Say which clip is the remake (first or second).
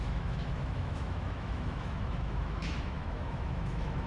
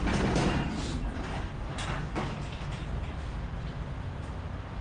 first